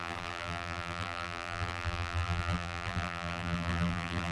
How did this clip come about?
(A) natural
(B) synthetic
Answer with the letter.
B